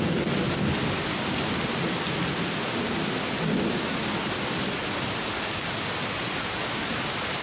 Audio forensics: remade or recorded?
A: recorded